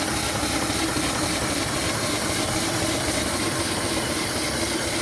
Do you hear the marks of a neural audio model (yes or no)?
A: yes